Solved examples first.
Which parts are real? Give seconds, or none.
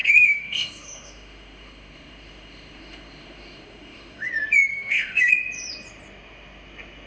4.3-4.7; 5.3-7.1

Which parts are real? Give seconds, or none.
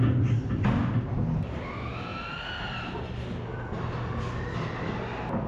0.0-0.8; 1.7-5.5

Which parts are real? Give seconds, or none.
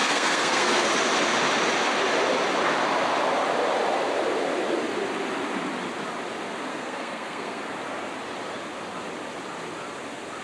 0.9-6.7; 7.6-10.4